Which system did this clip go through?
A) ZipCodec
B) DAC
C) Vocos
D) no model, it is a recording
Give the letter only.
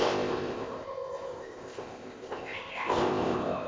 A